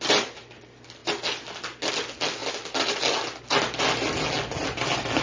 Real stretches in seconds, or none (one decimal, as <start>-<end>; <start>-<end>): 0.0-5.2